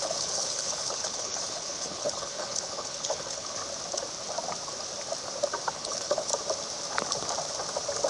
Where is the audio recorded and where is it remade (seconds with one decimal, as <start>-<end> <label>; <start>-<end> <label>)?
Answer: 0.0-3.6 remade; 3.6-5.7 recorded; 5.7-6.3 remade; 6.3-8.1 recorded